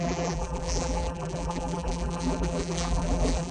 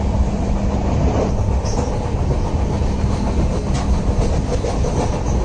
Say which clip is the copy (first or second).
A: first